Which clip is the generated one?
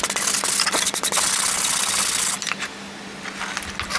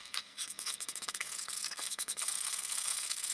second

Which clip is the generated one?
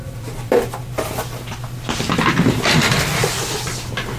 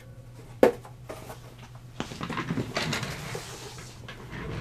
first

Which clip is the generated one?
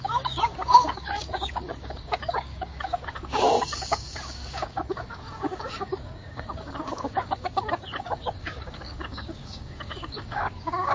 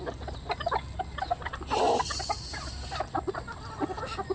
first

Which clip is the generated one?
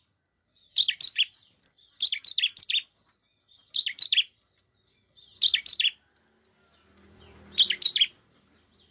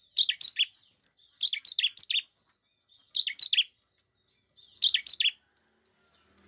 first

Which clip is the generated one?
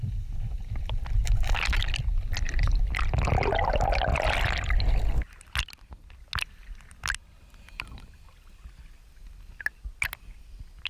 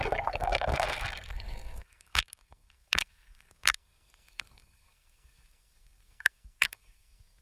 second